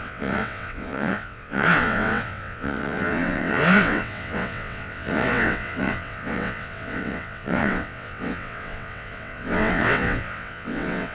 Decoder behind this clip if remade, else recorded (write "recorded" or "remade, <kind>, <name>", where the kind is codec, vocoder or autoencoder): remade, vocoder, WaveNeXt